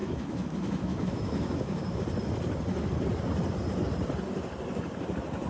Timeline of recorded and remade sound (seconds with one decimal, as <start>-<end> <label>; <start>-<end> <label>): 0.0-2.0 remade; 2.0-5.5 recorded